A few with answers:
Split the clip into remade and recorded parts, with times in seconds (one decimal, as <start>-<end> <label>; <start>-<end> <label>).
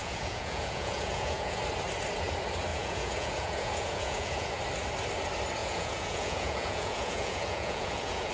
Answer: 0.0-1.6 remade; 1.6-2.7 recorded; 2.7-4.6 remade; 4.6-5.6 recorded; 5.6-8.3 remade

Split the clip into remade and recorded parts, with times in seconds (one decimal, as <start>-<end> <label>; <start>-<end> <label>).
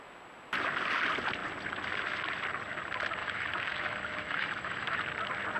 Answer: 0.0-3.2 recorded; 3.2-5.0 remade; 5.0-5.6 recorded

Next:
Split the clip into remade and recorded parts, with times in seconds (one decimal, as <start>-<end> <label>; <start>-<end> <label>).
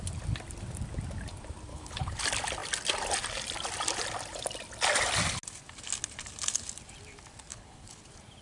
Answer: 0.0-1.7 recorded; 1.7-2.2 remade; 2.2-7.5 recorded; 7.5-8.0 remade; 8.0-8.4 recorded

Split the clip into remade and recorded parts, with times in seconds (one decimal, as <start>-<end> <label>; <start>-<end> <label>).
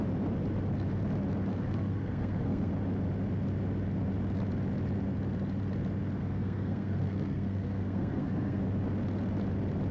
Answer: 0.0-1.5 recorded; 1.5-2.7 remade; 2.7-6.2 recorded; 6.2-8.6 remade; 8.6-9.9 recorded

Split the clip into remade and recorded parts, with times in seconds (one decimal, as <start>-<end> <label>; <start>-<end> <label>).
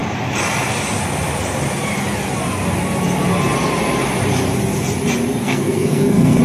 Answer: 0.0-5.4 recorded; 5.4-6.4 remade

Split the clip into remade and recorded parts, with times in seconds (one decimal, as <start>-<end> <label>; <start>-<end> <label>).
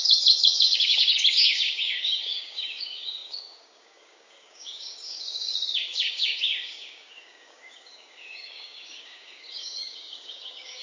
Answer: 0.0-10.8 remade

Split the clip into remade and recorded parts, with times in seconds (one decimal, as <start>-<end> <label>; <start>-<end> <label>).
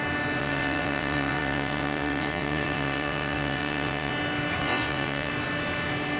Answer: 0.0-0.4 recorded; 0.4-4.1 remade; 4.1-4.6 recorded; 4.6-5.3 remade; 5.3-6.2 recorded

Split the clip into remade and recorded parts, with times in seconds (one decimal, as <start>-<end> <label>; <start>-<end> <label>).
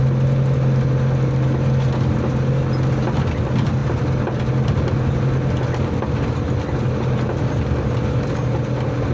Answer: 0.0-9.1 recorded